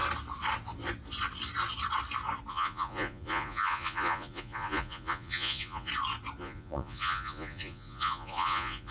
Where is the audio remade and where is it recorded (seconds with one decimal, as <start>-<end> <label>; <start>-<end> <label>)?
0.0-2.5 recorded; 2.5-5.9 remade; 5.9-6.4 recorded; 6.4-8.9 remade